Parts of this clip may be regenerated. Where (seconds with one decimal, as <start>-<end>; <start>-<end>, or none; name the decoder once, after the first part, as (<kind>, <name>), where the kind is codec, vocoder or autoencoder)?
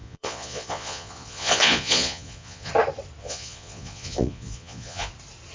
0.0-2.7 (vocoder, Vocos); 3.2-5.1